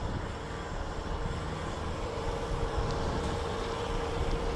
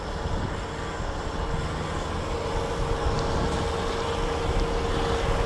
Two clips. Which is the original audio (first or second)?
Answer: second